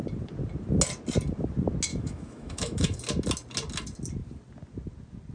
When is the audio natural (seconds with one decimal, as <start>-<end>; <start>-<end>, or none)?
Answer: 0.0-1.9; 3.0-5.3